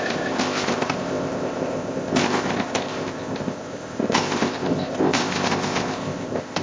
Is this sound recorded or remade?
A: remade